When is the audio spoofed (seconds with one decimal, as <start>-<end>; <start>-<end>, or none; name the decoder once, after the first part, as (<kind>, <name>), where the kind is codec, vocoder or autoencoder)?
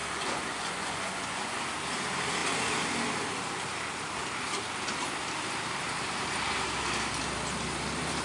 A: 0.0-1.6 (vocoder, Vocos)